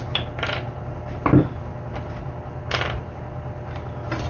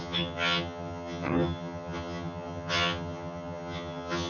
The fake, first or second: second